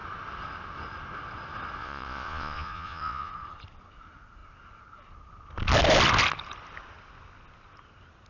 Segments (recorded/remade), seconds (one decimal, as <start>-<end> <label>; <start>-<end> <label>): 0.0-1.8 recorded; 1.8-3.3 remade; 3.3-8.3 recorded

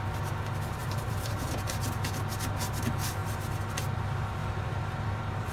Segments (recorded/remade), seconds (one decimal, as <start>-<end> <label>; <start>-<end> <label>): 0.0-0.8 recorded; 0.8-1.8 remade; 1.8-4.4 recorded; 4.4-5.5 remade

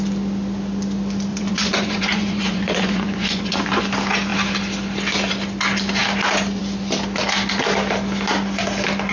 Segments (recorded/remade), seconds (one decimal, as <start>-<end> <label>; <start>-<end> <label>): 0.0-1.3 recorded; 1.3-3.8 remade; 3.8-9.1 recorded

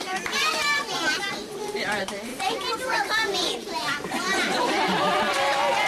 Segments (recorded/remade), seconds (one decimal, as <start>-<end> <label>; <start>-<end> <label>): 0.0-5.9 remade